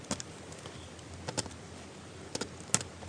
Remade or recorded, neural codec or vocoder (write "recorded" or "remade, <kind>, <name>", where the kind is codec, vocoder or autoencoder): recorded